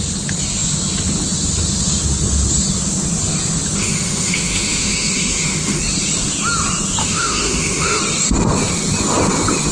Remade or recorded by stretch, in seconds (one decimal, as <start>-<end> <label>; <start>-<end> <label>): 0.0-3.8 recorded; 3.8-5.8 remade; 5.8-7.0 recorded; 7.0-8.0 remade; 8.0-9.7 recorded